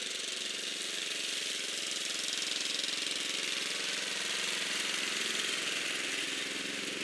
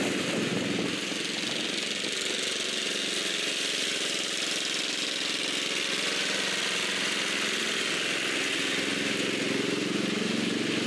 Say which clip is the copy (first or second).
first